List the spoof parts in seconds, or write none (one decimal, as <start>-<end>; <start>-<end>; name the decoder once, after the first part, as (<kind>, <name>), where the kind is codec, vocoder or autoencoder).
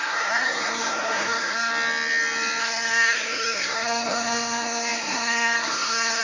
0.0-1.7 (codec, SNAC); 2.6-6.2